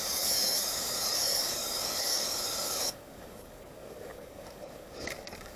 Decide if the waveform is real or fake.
fake